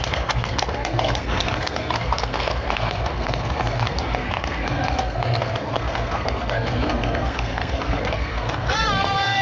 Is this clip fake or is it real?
fake